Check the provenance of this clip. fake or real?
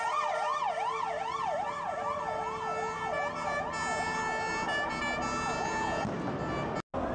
real